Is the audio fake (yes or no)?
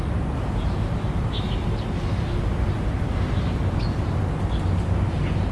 no